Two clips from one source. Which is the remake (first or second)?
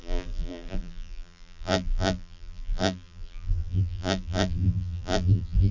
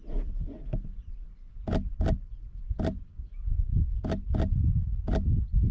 first